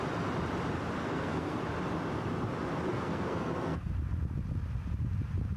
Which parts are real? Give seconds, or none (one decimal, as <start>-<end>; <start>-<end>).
0.0-1.0; 1.6-2.9; 3.9-5.6

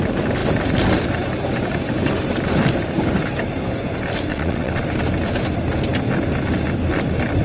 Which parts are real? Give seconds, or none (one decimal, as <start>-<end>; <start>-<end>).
0.0-4.3; 4.8-7.4

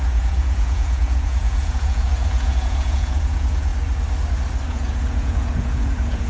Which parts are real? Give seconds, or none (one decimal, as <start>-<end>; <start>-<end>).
3.7-4.7

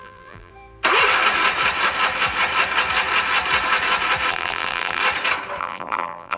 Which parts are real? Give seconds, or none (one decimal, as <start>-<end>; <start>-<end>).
0.5-4.3; 5.0-5.6

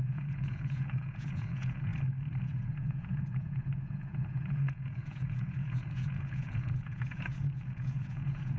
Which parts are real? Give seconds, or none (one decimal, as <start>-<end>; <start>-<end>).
1.9-2.4

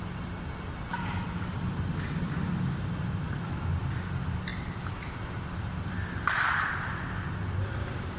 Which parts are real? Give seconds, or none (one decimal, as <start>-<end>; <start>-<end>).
0.0-4.5; 5.9-8.2

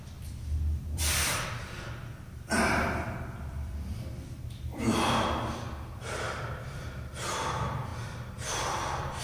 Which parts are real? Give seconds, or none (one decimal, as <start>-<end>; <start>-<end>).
1.3-2.1

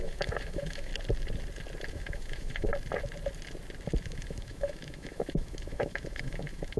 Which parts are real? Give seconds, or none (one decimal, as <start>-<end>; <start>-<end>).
0.9-1.9; 2.7-4.0